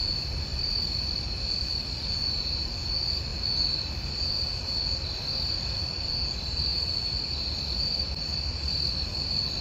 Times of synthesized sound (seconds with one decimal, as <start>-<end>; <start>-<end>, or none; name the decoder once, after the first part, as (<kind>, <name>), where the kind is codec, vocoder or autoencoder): none